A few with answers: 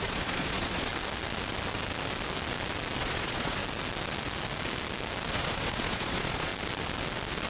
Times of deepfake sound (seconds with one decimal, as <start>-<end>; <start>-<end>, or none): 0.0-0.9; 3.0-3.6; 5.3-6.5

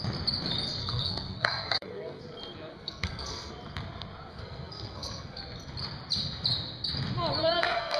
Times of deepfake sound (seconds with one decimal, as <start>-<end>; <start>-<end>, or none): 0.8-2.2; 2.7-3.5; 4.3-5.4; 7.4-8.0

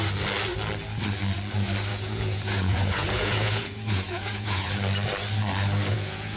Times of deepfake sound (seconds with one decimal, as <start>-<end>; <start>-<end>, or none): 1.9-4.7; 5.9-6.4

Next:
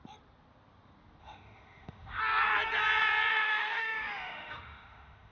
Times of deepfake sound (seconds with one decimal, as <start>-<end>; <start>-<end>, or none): 1.2-2.2; 3.3-5.3

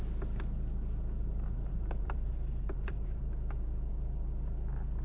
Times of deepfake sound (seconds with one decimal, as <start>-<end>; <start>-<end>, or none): 1.2-3.2